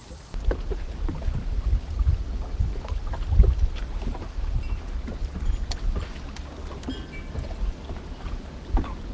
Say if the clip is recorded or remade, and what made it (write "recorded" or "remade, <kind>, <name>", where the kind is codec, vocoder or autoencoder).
recorded